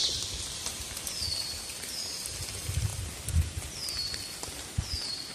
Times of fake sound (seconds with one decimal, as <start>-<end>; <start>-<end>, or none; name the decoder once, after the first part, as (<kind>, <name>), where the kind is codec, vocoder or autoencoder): none